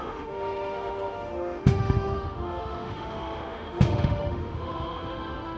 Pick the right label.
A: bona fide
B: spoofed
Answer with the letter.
B